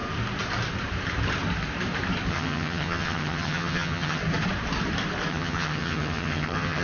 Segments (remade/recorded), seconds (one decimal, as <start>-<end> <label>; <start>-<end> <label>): 0.0-2.3 recorded; 2.3-4.2 remade; 4.2-5.3 recorded; 5.3-6.8 remade